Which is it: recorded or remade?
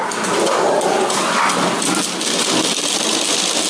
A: recorded